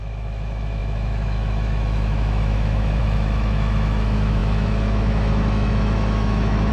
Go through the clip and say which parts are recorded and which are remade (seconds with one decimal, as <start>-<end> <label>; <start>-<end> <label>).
0.0-6.7 remade

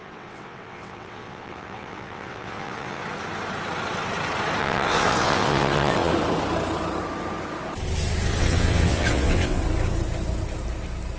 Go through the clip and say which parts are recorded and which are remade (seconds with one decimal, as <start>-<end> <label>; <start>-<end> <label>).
0.0-3.0 remade; 3.0-4.6 recorded; 4.6-6.1 remade; 6.1-8.4 recorded; 8.4-9.6 remade; 9.6-11.2 recorded

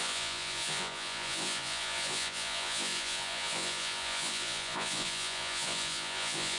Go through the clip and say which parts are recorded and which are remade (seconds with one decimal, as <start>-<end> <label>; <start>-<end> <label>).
0.0-6.6 remade

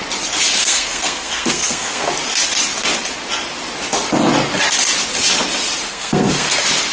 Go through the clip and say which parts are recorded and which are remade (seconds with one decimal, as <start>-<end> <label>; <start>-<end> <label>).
0.0-0.6 recorded; 0.6-2.1 remade; 2.1-5.9 recorded; 5.9-6.5 remade; 6.5-6.9 recorded

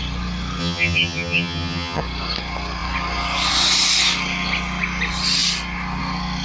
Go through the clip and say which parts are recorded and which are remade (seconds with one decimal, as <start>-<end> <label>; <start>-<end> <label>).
0.0-0.6 recorded; 0.6-2.0 remade; 2.0-6.4 recorded